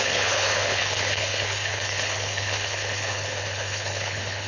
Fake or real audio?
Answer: fake